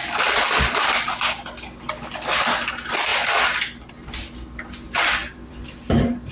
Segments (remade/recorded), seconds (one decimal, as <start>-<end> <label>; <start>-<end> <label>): 0.0-5.2 recorded; 5.2-6.3 remade